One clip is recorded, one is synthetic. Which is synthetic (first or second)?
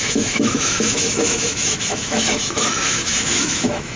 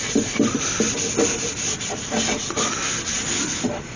first